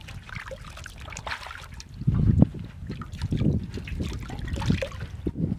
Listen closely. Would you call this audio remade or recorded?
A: recorded